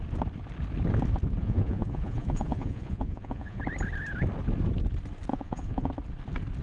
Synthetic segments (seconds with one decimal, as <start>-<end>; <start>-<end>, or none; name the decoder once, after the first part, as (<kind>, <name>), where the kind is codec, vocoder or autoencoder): 1.4-3.6 (vocoder, Vocos); 5.3-5.9